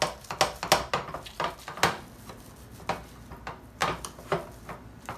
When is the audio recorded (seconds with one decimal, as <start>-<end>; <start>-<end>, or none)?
0.0-5.2